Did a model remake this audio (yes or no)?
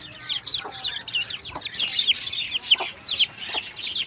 no